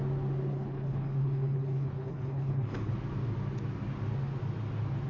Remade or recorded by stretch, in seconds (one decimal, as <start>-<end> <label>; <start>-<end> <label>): 0.0-0.5 recorded; 0.5-2.9 remade; 2.9-5.1 recorded